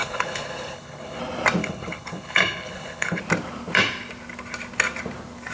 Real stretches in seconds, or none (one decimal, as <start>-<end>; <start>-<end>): 1.2-1.6; 3.2-5.5